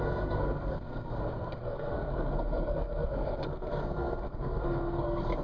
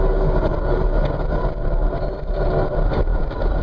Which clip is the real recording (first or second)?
second